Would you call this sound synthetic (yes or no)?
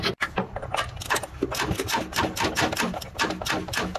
no